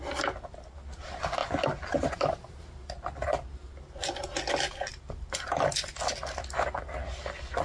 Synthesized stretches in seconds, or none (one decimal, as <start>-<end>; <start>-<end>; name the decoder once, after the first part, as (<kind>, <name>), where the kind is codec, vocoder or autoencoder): none